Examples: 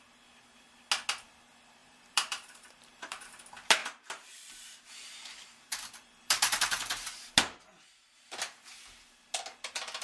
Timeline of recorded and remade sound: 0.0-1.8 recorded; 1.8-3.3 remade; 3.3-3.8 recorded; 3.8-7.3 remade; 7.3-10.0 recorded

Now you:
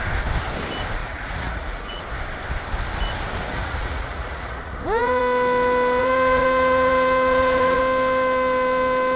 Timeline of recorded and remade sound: 0.0-1.0 recorded; 1.0-2.0 remade; 2.0-3.5 recorded; 3.5-5.2 remade; 5.2-6.0 recorded; 6.0-7.8 remade; 7.8-9.2 recorded

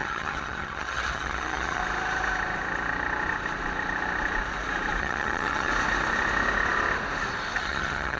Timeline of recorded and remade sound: 0.0-1.8 remade; 1.8-5.0 recorded; 5.0-5.7 remade; 5.7-7.6 recorded; 7.6-8.2 remade

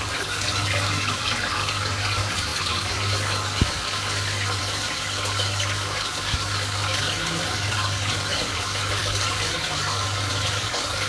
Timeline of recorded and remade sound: 0.0-11.1 remade

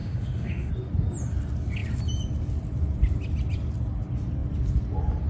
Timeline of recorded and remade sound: 0.0-0.7 remade; 0.7-5.3 recorded

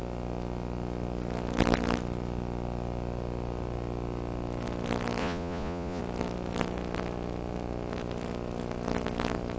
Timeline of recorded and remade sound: 0.0-5.2 recorded; 5.2-6.0 remade; 6.0-9.6 recorded

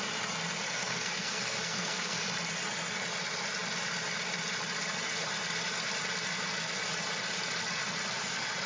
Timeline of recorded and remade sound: 0.0-0.6 recorded; 0.6-2.2 remade; 2.2-8.7 recorded

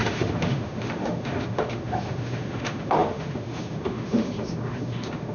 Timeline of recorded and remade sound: 0.0-5.3 remade